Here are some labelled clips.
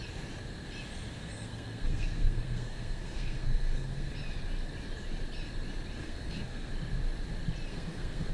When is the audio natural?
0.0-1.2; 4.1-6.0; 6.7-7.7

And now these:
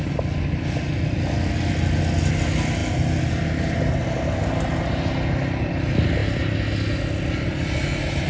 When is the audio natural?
0.0-8.3

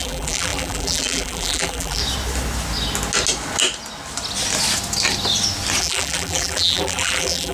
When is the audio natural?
2.0-5.8